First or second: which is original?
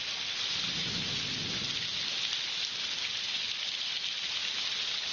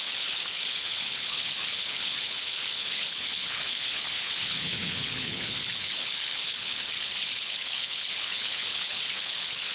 first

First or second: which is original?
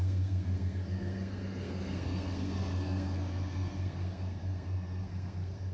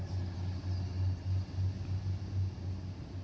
second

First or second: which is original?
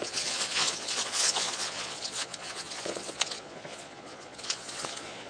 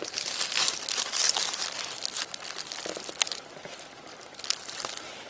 second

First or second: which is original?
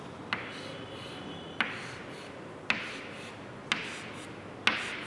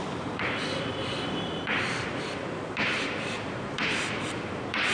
first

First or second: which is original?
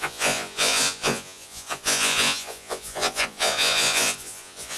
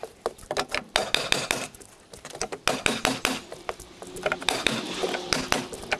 second